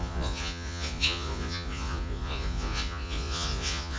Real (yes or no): no